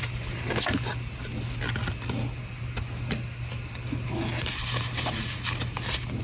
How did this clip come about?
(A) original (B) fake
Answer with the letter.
A